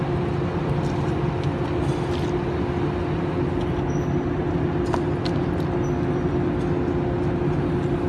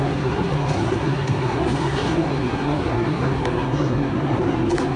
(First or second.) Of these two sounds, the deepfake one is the second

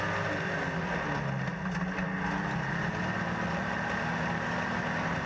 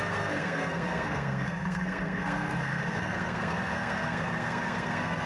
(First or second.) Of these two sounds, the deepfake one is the second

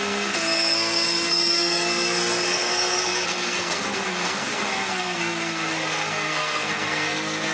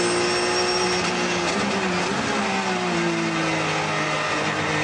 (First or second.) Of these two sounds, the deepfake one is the first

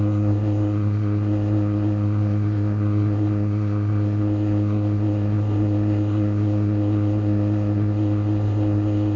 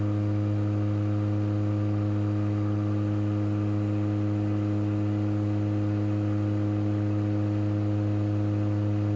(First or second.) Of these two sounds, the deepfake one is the first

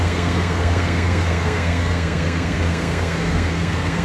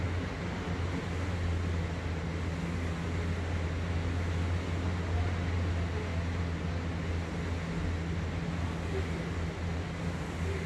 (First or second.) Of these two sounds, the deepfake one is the first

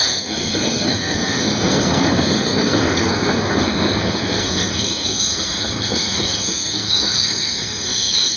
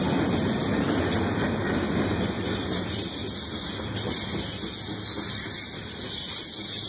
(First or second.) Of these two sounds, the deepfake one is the first